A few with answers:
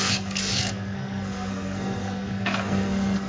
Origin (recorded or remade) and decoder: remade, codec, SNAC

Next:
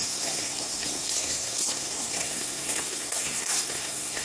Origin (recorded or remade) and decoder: remade, codec, SNAC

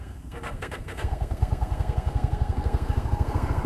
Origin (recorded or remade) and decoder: remade, codec, SNAC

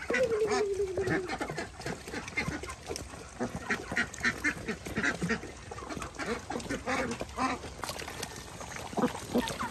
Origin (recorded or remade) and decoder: recorded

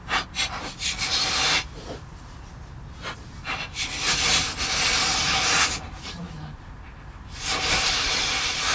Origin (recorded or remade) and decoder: recorded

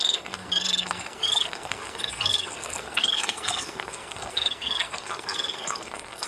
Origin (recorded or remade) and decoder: remade, codec, SNAC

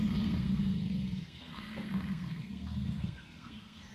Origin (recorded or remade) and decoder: remade, codec, SNAC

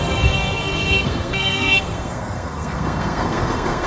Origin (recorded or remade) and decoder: remade, codec, SNAC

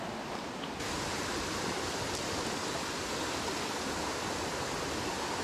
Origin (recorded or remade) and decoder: recorded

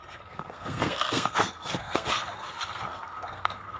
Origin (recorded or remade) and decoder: remade, codec, SNAC